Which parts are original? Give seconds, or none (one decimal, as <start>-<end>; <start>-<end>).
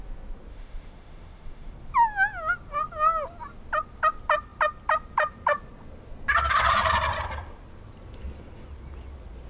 0.0-0.5; 1.7-9.5